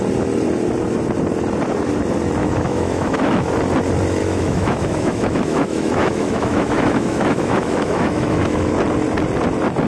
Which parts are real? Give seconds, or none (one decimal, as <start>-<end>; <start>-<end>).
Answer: 0.0-2.4; 3.5-4.2; 8.7-9.9